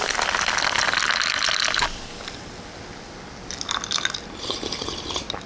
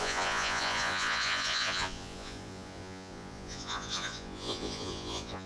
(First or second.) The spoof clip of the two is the second